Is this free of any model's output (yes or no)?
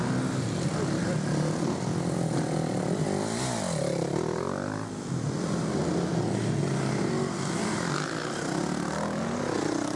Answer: yes